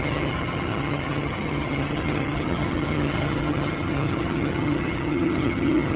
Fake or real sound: fake